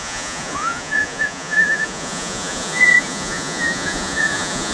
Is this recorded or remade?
remade